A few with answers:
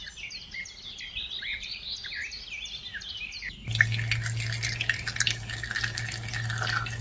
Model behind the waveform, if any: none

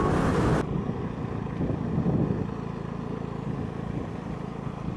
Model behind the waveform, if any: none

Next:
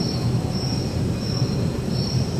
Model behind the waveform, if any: none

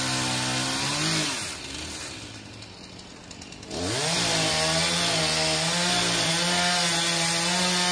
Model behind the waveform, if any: none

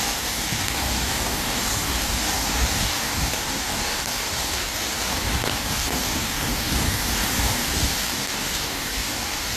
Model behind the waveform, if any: codec, DAC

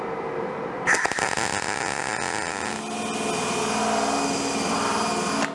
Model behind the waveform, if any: none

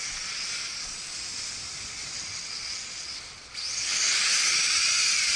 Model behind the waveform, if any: none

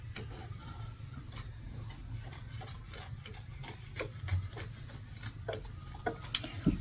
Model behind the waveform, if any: none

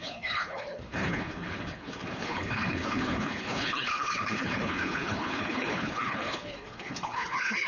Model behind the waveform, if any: codec, HILCodec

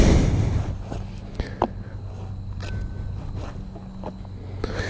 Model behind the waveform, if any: none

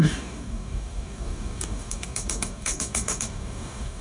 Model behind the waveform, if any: codec, DAC